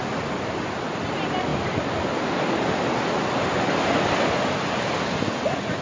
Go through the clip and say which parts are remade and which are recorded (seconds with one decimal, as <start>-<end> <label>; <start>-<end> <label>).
0.0-5.8 recorded